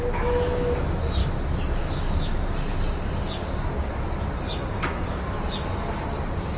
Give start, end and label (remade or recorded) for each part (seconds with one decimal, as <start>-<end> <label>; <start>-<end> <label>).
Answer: 0.0-1.2 remade; 1.2-1.8 recorded; 1.8-2.3 remade; 2.3-6.6 recorded